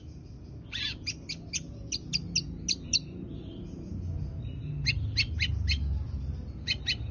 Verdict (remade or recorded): recorded